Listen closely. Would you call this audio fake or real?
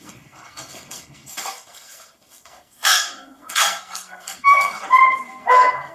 fake